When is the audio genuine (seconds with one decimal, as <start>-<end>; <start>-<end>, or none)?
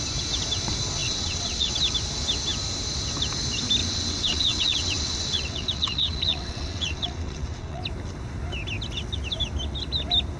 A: 0.0-1.0; 1.7-3.8; 7.8-10.4